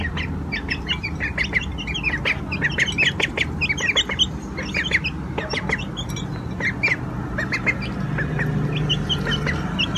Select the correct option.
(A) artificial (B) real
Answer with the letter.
B